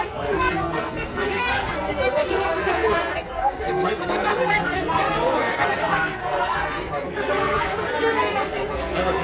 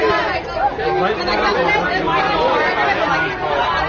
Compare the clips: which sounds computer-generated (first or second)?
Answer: first